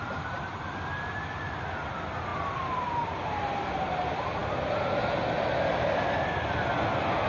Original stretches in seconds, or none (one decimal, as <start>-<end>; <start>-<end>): 0.0-7.3